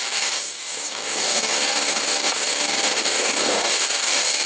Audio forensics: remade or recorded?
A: remade